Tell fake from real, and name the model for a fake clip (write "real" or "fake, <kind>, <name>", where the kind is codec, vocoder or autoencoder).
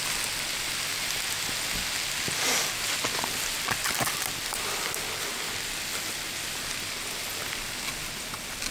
real